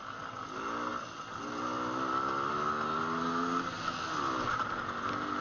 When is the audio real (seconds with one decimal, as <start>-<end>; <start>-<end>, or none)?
0.0-5.4